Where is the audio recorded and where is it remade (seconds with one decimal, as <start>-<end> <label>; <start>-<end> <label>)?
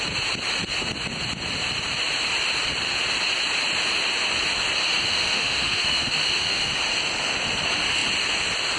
0.0-5.0 recorded; 5.0-6.7 remade; 6.7-8.8 recorded